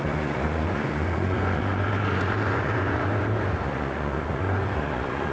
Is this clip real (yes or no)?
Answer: no